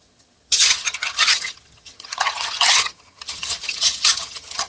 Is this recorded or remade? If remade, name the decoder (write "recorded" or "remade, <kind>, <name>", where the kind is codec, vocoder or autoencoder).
remade, vocoder, HiFi-GAN